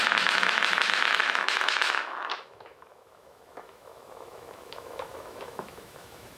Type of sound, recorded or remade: remade